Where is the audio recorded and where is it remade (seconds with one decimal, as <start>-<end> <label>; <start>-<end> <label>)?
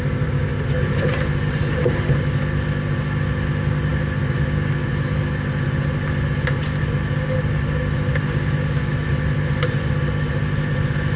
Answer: 0.0-11.2 recorded